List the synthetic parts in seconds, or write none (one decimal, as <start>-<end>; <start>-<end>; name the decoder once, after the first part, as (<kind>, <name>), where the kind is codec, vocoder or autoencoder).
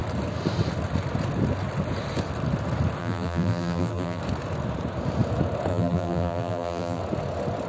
3.0-4.2 (vocoder, BigVGAN v2); 5.7-7.0